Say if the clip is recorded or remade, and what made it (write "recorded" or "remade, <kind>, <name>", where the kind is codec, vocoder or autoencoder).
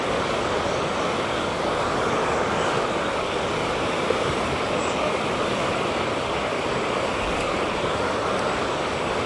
remade, codec, DAC